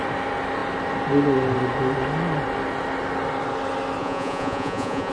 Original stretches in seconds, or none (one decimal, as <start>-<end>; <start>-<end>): 0.0-4.0